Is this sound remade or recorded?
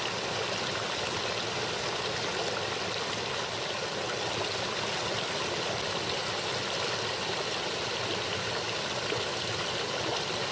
recorded